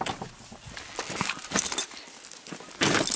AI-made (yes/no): no